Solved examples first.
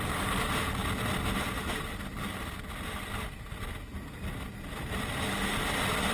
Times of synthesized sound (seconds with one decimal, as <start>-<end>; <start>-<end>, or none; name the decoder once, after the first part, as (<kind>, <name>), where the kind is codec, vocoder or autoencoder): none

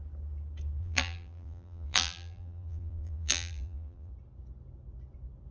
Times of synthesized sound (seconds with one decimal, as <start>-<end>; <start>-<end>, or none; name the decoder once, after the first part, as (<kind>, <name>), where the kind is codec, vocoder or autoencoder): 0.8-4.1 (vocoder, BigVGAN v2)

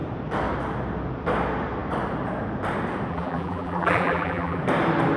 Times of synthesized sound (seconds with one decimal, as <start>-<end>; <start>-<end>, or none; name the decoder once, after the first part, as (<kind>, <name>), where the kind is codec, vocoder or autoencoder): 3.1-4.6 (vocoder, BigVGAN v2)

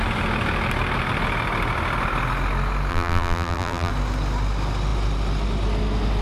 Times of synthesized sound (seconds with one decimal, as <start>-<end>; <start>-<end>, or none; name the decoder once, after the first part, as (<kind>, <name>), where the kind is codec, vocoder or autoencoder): 2.9-3.9 (vocoder, BigVGAN v2)

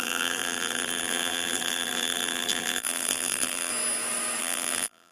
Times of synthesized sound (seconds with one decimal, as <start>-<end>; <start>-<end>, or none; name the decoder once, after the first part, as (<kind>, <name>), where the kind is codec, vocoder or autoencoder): 0.0-3.7 (vocoder, BigVGAN v2); 4.4-5.1

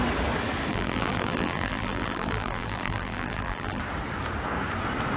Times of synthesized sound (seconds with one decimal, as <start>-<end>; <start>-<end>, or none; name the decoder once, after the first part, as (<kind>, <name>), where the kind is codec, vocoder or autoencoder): 0.7-3.8 (vocoder, BigVGAN v2)